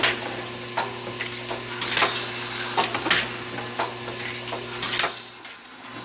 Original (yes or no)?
yes